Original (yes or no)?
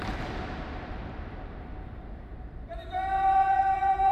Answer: no